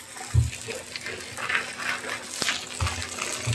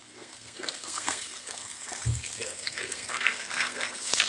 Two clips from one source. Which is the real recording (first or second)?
first